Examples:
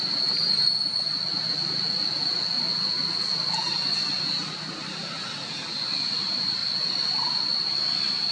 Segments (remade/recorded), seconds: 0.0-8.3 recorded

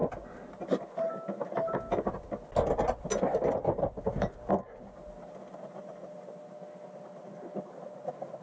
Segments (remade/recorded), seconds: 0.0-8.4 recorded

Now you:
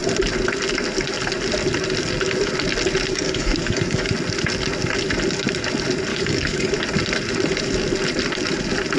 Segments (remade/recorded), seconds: 0.0-3.1 recorded; 3.1-4.1 remade; 4.1-6.1 recorded; 6.1-6.7 remade; 6.7-9.0 recorded

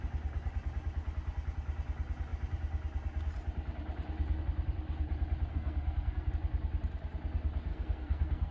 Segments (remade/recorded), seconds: 0.0-5.5 recorded; 5.5-6.3 remade; 6.3-7.7 recorded; 7.7-8.5 remade

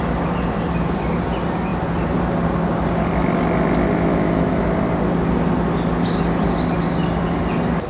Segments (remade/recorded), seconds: 0.0-4.1 recorded; 4.1-4.6 remade; 4.6-7.9 recorded

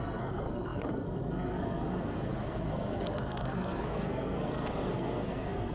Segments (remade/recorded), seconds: 0.0-5.7 remade

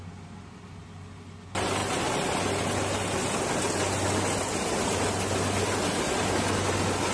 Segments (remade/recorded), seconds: 0.0-7.1 recorded

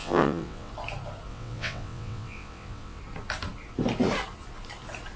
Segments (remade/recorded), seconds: 0.0-0.7 remade; 0.7-1.3 recorded; 1.3-3.0 remade; 3.0-5.2 recorded